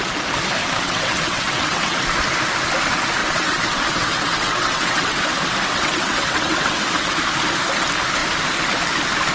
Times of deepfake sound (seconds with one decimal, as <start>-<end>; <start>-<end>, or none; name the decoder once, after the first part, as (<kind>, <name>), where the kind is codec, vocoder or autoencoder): 0.6-2.0 (vocoder, WaveNeXt); 3.2-5.2; 5.7-7.2